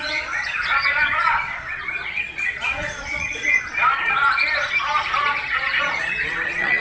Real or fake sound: fake